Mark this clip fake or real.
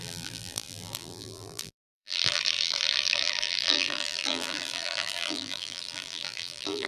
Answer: fake